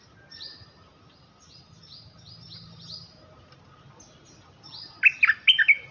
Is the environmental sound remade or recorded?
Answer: recorded